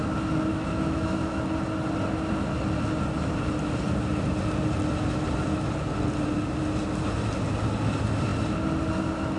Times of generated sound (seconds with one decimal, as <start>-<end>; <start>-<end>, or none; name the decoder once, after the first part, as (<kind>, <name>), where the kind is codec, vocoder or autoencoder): 0.5-1.4 (autoencoder, DAC-VAE)